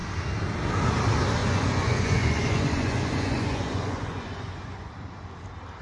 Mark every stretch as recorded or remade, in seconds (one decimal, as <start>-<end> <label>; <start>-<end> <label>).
0.0-1.4 recorded; 1.4-4.9 remade; 4.9-5.8 recorded